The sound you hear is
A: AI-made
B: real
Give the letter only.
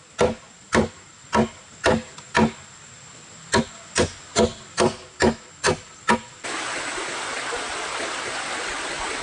B